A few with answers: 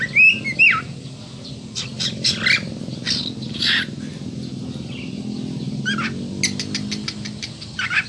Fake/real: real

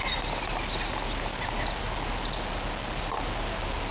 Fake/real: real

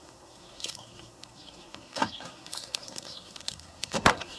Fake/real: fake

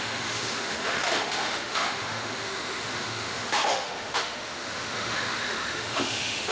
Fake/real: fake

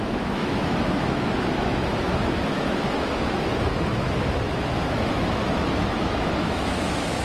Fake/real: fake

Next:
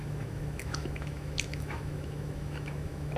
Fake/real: fake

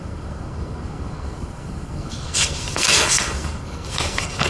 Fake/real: fake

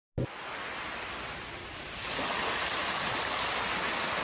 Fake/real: real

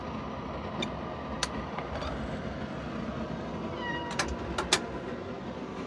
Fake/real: real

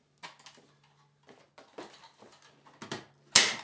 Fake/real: real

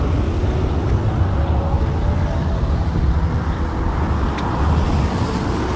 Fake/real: real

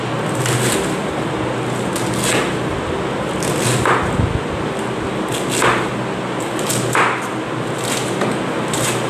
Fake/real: real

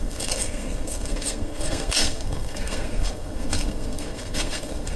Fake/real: fake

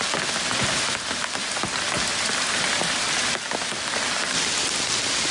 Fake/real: real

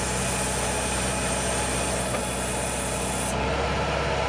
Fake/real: real